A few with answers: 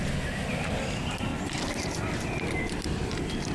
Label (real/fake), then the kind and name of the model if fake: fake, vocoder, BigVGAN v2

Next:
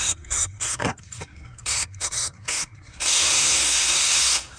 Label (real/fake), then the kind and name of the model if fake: fake, codec, SNAC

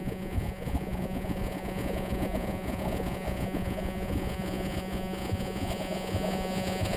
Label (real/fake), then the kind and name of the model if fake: fake, vocoder, Vocos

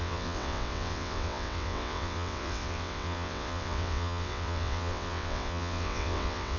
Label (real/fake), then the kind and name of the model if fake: fake, vocoder, WaveNeXt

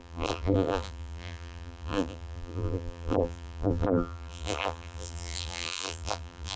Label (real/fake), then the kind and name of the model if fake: fake, vocoder, BigVGAN v2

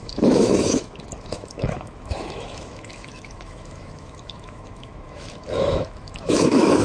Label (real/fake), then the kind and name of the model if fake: fake, autoencoder, DAC-VAE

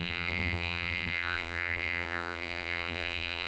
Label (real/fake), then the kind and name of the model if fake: fake, vocoder, BigVGAN v2